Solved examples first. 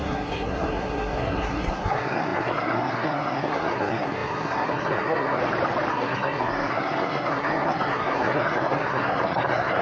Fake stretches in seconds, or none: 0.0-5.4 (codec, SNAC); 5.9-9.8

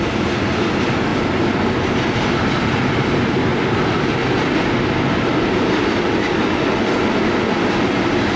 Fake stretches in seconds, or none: 1.1-1.6 (vocoder, BigVGAN v2); 3.5-4.1; 5.3-7.0

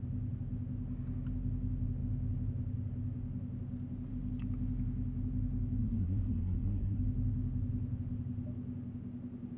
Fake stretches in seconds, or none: 5.8-7.0 (codec, SNAC)

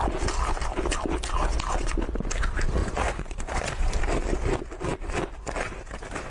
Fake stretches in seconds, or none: 2.8-4.0 (vocoder, Vocos)

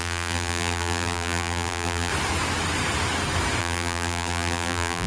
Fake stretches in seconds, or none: 0.0-2.1 (vocoder, BigVGAN v2); 3.6-5.1

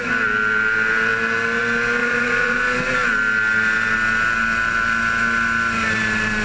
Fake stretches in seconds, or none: 2.0-2.6 (vocoder, Vocos)

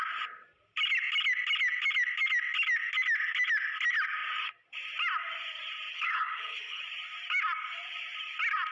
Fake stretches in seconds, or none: 5.9-6.8 (codec, HILCodec)